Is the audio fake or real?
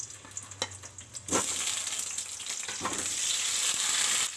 real